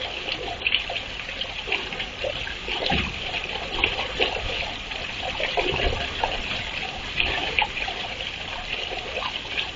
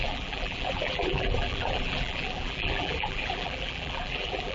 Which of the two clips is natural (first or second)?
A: first